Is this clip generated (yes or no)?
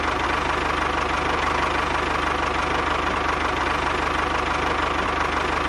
no